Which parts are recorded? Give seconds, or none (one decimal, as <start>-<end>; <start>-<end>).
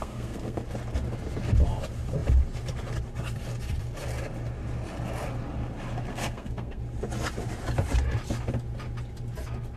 0.6-6.1; 6.8-9.8